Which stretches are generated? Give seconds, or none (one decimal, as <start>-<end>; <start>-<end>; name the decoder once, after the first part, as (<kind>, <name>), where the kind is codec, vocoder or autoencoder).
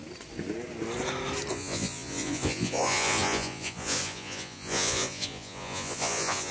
1.5-6.5 (vocoder, Vocos)